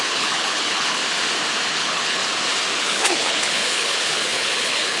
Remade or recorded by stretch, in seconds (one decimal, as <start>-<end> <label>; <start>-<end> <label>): 0.0-1.0 remade; 1.0-1.7 recorded; 1.7-2.2 remade; 2.2-2.8 recorded; 2.8-5.0 remade